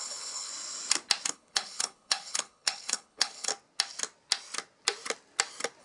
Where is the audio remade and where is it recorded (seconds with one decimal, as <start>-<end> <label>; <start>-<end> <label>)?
0.0-0.5 remade; 0.5-1.3 recorded; 1.3-3.5 remade; 3.5-5.8 recorded